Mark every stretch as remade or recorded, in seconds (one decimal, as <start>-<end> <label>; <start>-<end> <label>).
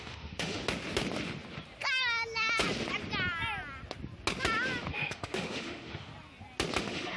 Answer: 0.0-0.6 remade; 0.6-4.9 recorded; 4.9-6.1 remade; 6.1-6.8 recorded; 6.8-7.2 remade